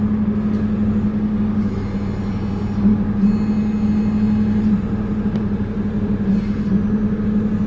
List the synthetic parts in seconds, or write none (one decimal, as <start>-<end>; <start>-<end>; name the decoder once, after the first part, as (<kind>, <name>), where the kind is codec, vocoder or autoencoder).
1.1-1.7 (codec, DAC)